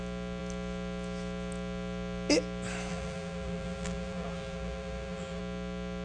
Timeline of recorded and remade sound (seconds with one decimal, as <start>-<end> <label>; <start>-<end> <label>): 0.0-2.9 recorded; 2.9-5.4 remade; 5.4-6.0 recorded